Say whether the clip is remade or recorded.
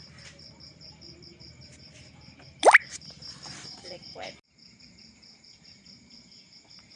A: remade